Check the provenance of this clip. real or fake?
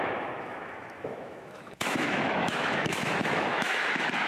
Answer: fake